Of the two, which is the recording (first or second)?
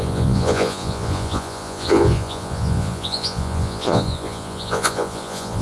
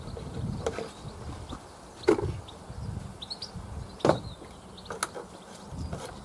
second